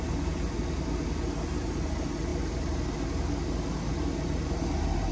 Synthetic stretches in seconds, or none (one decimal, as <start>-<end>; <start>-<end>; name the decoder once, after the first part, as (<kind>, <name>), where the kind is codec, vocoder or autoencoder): none